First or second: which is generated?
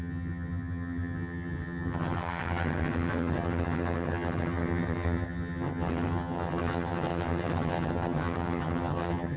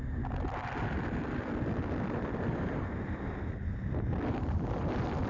first